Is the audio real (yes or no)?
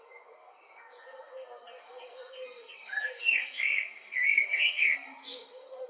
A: no